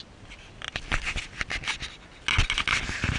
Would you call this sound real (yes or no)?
yes